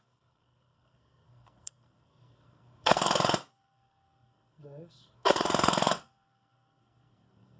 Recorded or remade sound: remade